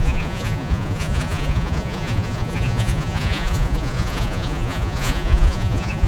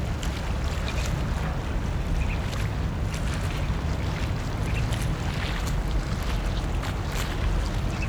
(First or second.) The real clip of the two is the second